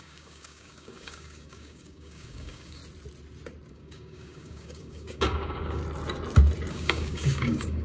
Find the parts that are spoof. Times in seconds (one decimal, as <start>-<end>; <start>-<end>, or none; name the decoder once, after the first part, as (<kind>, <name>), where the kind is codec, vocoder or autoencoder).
0.0-2.8 (codec, DAC); 3.7-5.8; 6.7-7.8